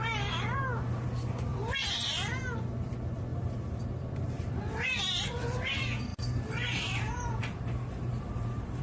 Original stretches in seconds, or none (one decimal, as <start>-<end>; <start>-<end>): 0.0-1.5; 2.1-3.3; 4.6-6.1